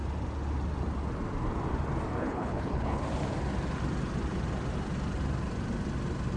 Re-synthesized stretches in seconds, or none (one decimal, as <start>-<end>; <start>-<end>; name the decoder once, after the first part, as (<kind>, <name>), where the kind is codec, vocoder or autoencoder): 2.2-3.0 (codec, HILCodec)